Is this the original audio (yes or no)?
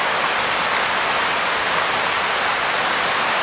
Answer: yes